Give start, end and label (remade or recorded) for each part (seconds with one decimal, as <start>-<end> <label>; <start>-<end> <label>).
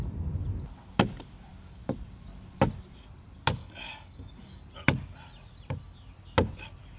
0.0-3.6 recorded; 3.6-4.6 remade; 4.6-7.0 recorded